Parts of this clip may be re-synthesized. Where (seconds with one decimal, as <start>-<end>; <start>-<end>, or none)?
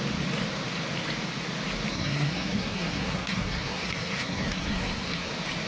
1.9-5.3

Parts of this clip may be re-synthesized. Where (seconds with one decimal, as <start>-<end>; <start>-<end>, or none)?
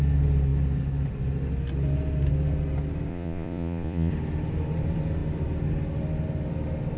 3.1-4.1